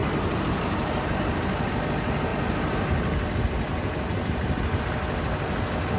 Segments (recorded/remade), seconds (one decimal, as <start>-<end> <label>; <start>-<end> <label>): 0.0-1.7 remade; 1.7-6.0 recorded